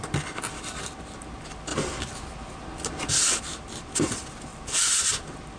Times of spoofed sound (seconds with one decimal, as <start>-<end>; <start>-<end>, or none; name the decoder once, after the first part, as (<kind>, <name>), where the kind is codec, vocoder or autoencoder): none